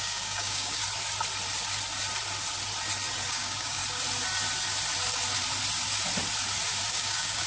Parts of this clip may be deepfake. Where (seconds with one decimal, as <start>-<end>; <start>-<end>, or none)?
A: 0.0-0.8; 3.3-3.8; 6.9-7.5